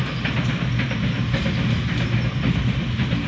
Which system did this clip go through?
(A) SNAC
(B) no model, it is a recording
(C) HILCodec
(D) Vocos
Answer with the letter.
B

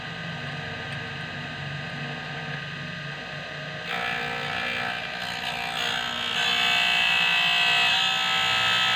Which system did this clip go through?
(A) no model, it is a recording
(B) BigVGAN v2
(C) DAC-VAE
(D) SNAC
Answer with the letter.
A